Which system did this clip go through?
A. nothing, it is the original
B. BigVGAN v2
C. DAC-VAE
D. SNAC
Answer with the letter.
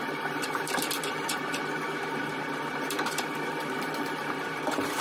B